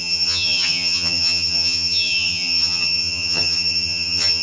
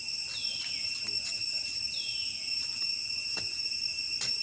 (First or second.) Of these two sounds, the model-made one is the first